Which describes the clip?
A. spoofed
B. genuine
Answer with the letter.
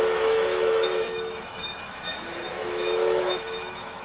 A